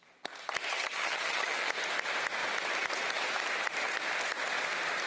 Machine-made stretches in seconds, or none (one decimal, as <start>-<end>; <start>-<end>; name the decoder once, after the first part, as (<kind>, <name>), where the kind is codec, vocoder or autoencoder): 0.7-1.7 (vocoder, HiFi-GAN)